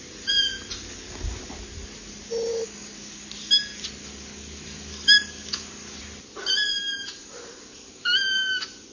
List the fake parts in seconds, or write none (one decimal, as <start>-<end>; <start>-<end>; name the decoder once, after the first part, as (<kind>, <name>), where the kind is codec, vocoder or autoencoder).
2.5-3.3 (codec, DAC); 4.0-6.0; 6.9-8.5